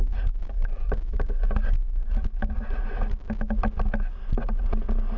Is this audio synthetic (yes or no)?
no